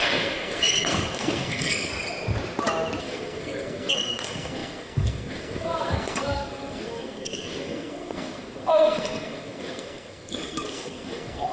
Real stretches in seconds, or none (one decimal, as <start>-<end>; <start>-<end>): 1.9-3.0